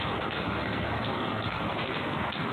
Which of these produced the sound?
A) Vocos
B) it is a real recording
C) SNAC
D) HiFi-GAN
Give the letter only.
C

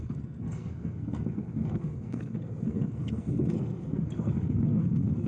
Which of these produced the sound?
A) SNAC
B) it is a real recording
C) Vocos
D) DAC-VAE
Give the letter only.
A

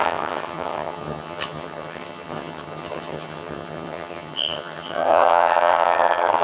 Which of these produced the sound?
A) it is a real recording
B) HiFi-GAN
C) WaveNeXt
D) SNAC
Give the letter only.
B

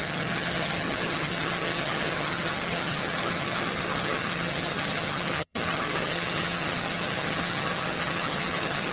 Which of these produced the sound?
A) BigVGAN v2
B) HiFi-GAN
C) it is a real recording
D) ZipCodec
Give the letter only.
B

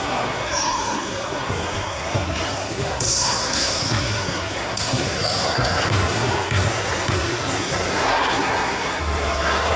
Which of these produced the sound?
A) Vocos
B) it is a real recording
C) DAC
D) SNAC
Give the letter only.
D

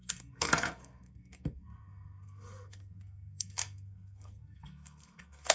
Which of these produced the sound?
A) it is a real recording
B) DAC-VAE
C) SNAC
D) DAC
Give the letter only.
C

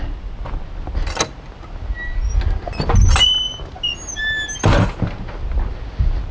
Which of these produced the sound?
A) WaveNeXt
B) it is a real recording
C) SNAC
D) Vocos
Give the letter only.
B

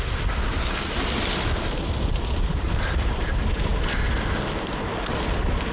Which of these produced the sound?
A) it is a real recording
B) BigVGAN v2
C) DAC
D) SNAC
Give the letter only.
B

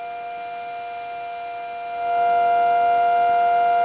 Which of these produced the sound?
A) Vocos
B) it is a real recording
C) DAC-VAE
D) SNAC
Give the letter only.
B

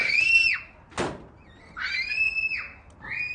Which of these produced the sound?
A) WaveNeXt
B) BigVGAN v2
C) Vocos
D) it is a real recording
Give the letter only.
D